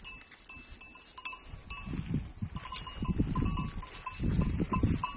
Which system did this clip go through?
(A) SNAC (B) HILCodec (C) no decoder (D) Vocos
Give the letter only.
C